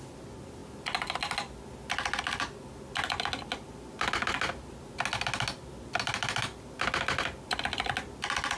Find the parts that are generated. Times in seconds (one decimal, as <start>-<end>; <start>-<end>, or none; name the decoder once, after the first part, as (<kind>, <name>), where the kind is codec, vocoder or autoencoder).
none